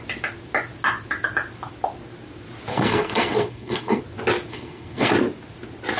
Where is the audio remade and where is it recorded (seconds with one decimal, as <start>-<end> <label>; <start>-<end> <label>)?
0.0-2.7 recorded; 2.7-4.0 remade; 4.0-4.5 recorded; 4.5-5.1 remade; 5.1-6.0 recorded

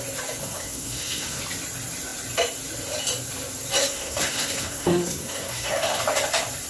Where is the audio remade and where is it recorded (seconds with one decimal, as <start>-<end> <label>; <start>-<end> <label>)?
0.0-0.4 recorded; 0.4-1.4 remade; 1.4-3.8 recorded; 3.8-6.0 remade; 6.0-6.7 recorded

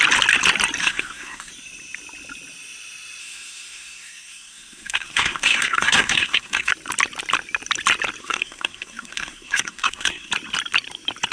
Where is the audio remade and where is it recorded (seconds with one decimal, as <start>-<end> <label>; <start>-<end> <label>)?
0.0-0.8 recorded; 0.8-1.5 remade; 1.5-3.2 recorded; 3.2-6.7 remade; 6.7-8.2 recorded; 8.2-10.3 remade; 10.3-11.3 recorded

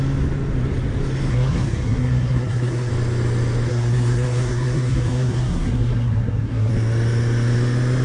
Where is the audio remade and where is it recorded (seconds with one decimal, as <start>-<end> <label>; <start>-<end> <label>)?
0.0-1.3 recorded; 1.3-2.9 remade; 2.9-3.7 recorded; 3.7-6.7 remade; 6.7-8.0 recorded

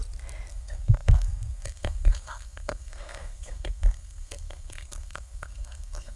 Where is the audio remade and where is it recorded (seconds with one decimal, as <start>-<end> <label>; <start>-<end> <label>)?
0.0-0.5 recorded; 0.5-6.2 remade

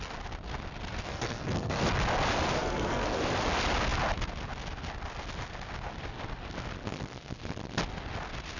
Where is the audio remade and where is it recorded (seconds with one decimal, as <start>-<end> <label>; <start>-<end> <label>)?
0.0-1.1 recorded; 1.1-1.8 remade; 1.8-2.6 recorded; 2.6-3.2 remade; 3.2-8.6 recorded

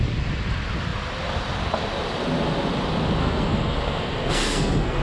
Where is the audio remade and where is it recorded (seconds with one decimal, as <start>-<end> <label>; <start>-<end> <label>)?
0.0-3.2 recorded; 3.2-5.0 remade